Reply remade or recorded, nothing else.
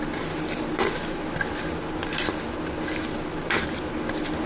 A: recorded